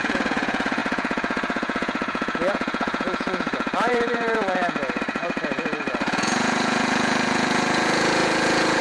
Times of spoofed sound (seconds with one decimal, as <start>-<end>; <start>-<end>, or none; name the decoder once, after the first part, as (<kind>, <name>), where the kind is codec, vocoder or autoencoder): 0.0-8.8 (vocoder, Vocos)